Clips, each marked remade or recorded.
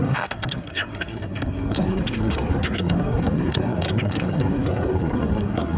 remade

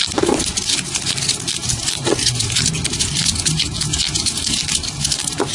remade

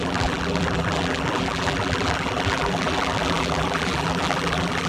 remade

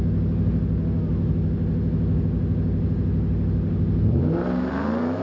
recorded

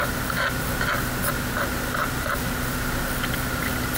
recorded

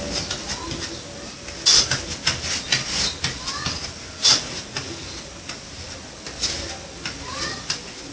recorded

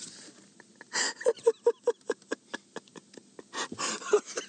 recorded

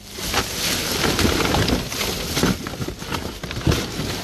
recorded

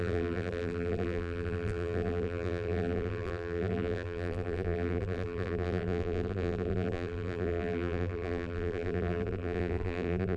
remade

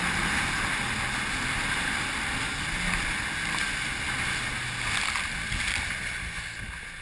recorded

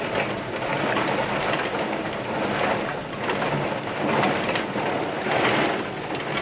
recorded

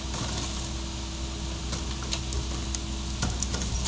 recorded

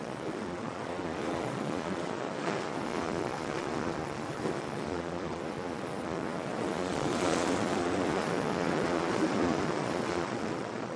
remade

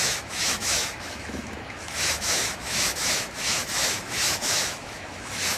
remade